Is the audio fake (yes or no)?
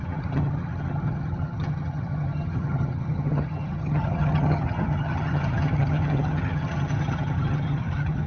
yes